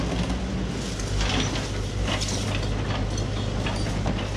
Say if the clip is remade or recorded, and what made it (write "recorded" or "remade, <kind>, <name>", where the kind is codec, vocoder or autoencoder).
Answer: recorded